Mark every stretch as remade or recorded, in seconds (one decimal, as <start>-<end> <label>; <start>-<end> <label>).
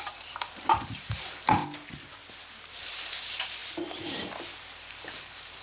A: 0.0-1.6 remade; 1.6-2.7 recorded; 2.7-3.6 remade; 3.6-4.9 recorded; 4.9-5.6 remade